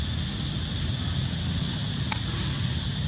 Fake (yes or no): no